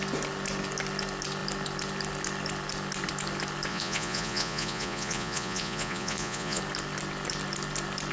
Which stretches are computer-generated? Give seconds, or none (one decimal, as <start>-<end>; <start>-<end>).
3.7-6.6